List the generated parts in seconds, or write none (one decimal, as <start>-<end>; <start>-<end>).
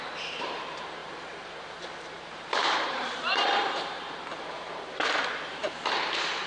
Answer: 0.0-5.6